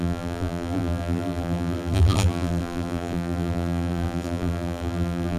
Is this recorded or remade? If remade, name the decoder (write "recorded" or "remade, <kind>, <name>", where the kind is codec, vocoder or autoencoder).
remade, vocoder, BigVGAN v2